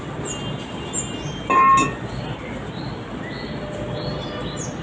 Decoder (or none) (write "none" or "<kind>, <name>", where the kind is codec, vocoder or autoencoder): none